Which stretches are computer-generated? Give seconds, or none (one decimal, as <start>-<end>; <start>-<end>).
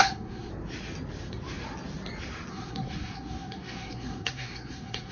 0.0-0.5; 2.5-5.1